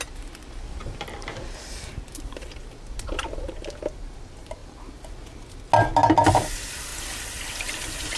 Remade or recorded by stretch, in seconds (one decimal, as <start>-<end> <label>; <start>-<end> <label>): 0.0-8.2 recorded